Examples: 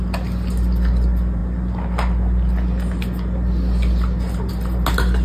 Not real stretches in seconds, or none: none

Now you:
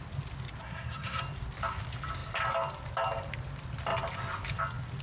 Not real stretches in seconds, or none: 0.6-1.2

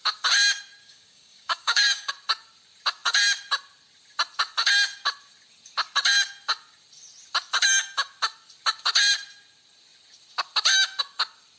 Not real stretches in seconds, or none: 0.8-2.1

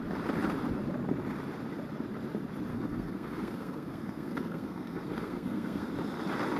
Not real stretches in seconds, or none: 2.7-5.9

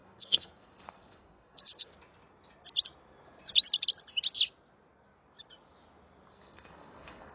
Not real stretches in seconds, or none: 0.0-1.9; 6.3-7.3